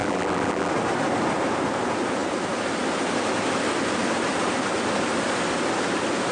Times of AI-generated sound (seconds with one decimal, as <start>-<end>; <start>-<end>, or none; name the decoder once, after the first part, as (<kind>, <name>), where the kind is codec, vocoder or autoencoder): 0.0-0.7 (vocoder, BigVGAN v2)